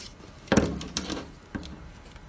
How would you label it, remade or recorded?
recorded